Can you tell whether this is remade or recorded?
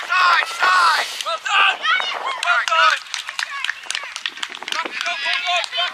remade